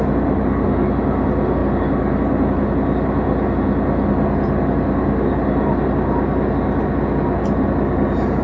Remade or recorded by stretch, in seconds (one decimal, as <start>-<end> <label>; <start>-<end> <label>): 0.0-8.4 recorded